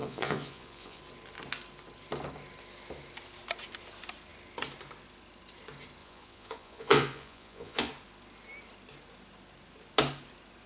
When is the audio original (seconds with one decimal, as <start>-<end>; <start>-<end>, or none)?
1.0-6.0; 7.9-10.7